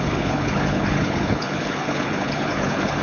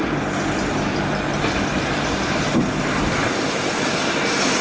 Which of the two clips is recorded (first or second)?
second